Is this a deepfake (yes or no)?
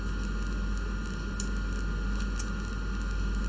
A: no